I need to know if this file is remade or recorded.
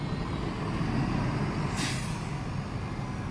recorded